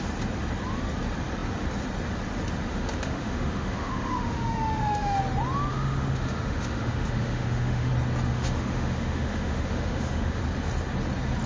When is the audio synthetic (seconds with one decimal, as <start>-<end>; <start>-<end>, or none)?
2.7-5.2; 5.7-7.9; 8.3-10.4